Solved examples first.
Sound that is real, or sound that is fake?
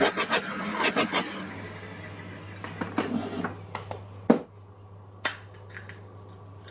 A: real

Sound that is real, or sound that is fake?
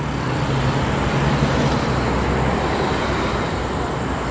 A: real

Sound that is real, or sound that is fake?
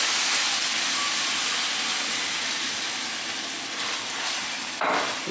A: real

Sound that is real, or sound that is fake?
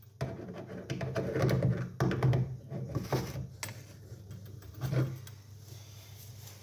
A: real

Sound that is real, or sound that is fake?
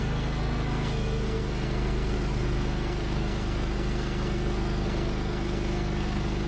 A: fake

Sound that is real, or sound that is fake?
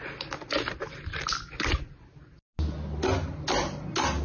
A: real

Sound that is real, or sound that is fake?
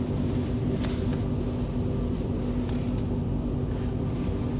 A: real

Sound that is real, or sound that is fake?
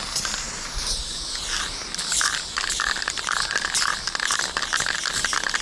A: real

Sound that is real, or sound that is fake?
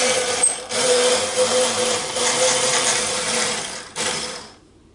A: fake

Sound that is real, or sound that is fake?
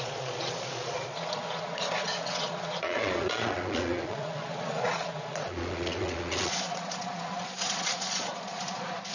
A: fake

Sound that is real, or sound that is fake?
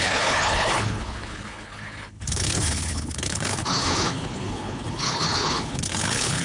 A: fake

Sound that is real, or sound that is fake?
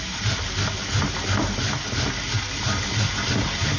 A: real